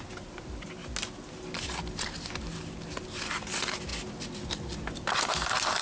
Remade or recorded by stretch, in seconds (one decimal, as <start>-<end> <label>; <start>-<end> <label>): 0.0-5.8 recorded